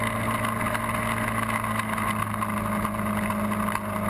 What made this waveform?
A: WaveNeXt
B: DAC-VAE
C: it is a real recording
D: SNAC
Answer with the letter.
C